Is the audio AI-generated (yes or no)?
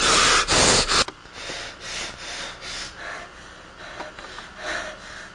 no